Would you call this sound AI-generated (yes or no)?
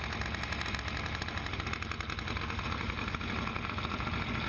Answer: no